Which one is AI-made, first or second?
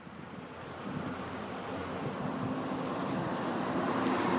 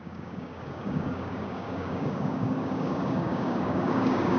second